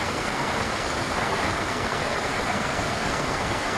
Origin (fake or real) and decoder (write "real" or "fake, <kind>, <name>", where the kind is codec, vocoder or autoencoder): fake, codec, SNAC